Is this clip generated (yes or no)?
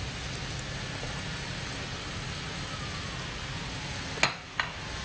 no